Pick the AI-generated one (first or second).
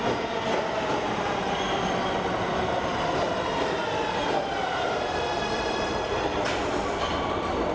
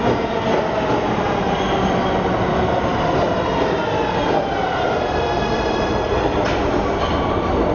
first